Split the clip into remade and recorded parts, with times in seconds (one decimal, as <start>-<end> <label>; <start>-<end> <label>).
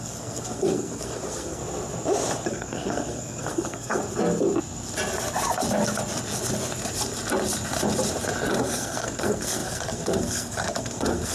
0.0-1.6 remade; 1.6-2.5 recorded; 2.5-4.0 remade; 4.0-8.6 recorded; 8.6-11.3 remade